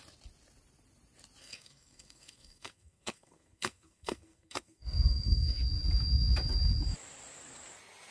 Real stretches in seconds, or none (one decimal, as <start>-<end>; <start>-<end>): 0.0-1.4; 5.6-8.1